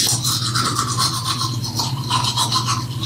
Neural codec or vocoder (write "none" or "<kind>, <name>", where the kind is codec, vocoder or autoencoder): none